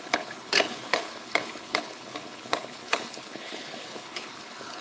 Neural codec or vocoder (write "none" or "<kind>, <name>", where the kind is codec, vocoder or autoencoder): codec, HILCodec